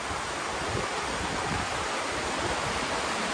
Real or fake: real